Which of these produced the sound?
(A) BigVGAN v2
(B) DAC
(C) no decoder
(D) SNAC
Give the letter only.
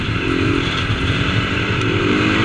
A